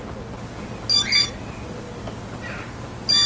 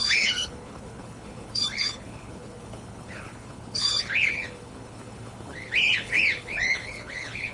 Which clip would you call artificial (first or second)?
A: second